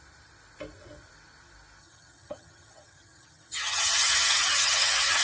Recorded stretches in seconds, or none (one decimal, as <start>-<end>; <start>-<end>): 0.0-1.8